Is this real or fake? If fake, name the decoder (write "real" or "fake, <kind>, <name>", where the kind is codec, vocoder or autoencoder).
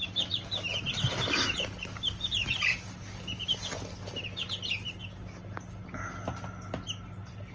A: real